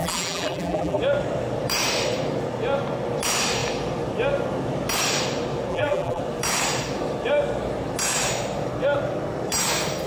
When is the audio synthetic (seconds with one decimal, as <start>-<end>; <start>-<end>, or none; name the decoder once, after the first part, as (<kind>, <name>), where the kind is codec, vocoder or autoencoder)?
0.0-1.0 (vocoder, BigVGAN v2); 5.7-6.2